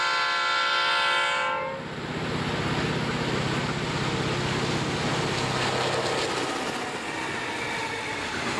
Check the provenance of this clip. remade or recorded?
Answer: recorded